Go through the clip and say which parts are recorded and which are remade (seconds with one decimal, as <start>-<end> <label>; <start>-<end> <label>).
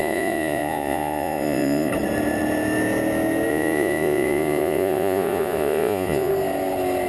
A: 0.0-1.9 remade; 1.9-3.5 recorded; 3.5-6.3 remade; 6.3-7.1 recorded